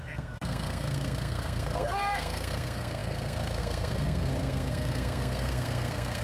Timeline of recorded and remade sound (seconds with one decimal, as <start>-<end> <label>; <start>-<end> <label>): 0.0-6.2 remade